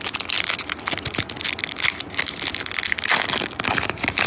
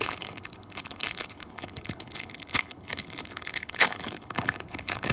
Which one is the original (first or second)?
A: first